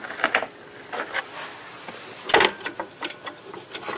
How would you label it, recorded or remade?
recorded